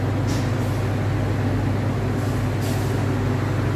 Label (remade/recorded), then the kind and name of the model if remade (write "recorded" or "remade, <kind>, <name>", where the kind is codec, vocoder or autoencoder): recorded